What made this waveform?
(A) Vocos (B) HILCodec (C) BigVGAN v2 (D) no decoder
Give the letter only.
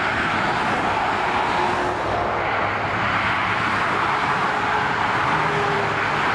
D